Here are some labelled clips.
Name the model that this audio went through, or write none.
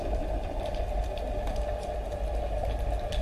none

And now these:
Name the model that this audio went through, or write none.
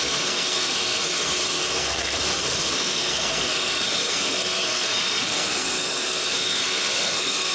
codec, SNAC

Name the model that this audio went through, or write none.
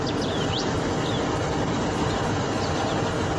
none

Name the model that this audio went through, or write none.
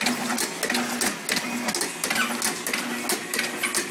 none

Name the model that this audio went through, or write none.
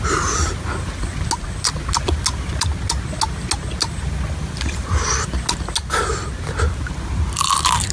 none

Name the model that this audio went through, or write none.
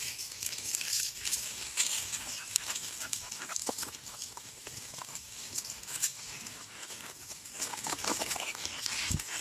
codec, DAC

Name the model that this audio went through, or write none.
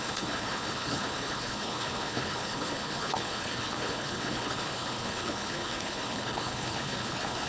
codec, HILCodec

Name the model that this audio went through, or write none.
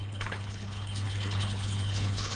codec, HILCodec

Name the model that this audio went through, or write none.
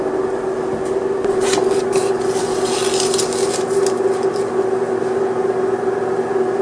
none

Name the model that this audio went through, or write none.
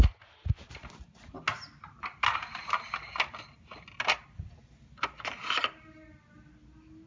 none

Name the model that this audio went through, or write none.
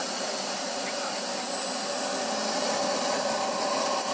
none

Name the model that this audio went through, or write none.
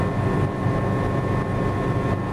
none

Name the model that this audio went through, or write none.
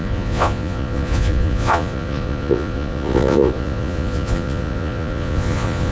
vocoder, Vocos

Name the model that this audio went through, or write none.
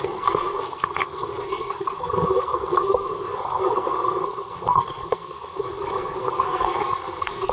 codec, SNAC